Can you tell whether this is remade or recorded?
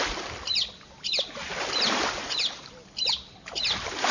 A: recorded